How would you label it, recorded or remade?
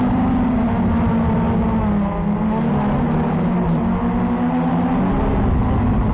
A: recorded